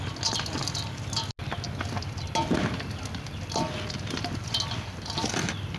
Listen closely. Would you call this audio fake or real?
real